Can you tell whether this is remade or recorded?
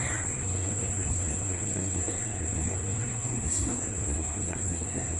remade